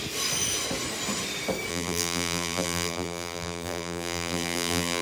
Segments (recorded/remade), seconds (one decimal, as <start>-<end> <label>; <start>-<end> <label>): 0.0-1.7 recorded; 1.7-5.0 remade